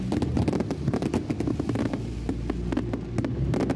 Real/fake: real